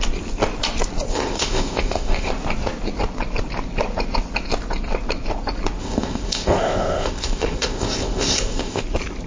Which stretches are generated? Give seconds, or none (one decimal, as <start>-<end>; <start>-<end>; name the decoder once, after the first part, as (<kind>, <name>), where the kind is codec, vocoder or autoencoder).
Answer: 1.1-2.3 (codec, ZipCodec); 5.8-8.8